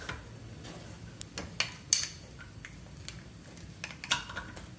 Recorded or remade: recorded